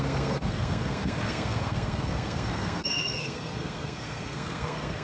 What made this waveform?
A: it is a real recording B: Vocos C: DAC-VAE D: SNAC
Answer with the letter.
D